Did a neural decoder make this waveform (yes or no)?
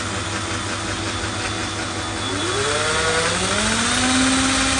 no